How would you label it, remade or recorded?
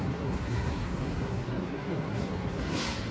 remade